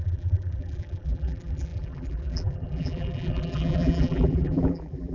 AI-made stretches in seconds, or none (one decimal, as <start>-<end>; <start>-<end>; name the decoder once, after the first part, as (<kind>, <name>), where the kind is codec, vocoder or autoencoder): 0.0-5.1 (vocoder, BigVGAN v2)